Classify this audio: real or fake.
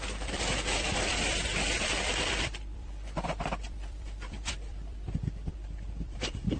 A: fake